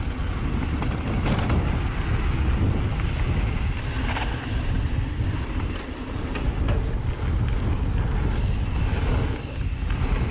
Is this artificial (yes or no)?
no